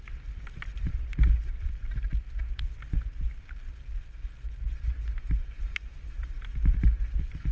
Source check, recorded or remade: recorded